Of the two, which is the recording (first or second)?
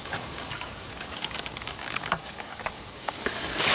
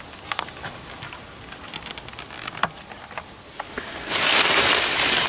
second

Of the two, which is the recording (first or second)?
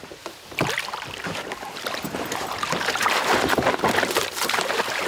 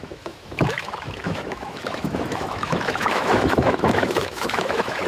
first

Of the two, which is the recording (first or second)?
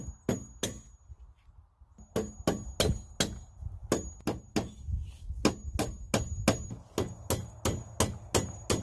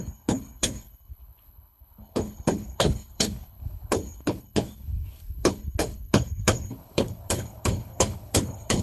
first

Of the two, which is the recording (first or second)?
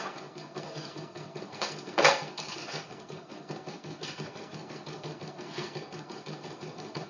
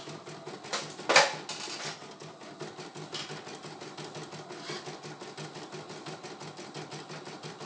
second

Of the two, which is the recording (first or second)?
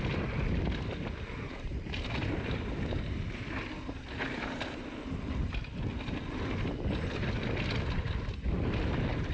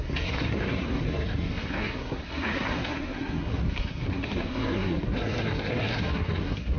first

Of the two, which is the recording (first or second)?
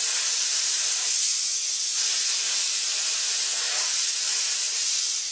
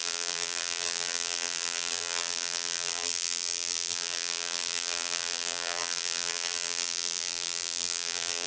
first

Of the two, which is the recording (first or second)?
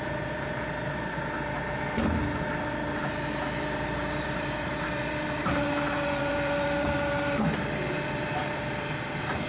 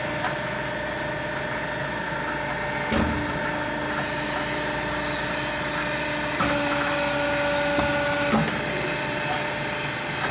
second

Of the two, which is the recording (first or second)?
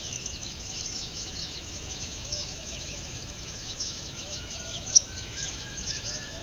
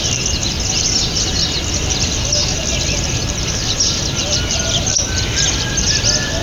second